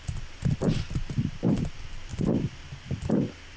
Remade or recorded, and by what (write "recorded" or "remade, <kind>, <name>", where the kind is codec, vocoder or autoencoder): remade, vocoder, BigVGAN v2